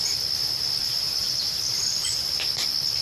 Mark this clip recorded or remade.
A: recorded